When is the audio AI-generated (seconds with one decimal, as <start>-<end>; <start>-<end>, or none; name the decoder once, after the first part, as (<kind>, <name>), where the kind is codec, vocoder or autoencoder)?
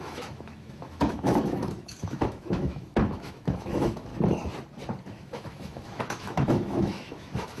0.0-4.1 (autoencoder, DAC-VAE); 5.1-7.6